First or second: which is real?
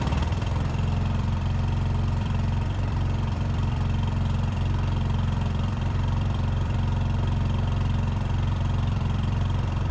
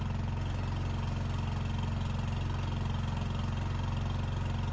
second